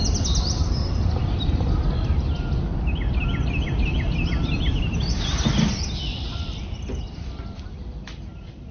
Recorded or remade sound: recorded